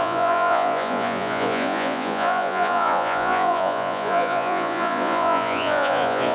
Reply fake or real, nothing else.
fake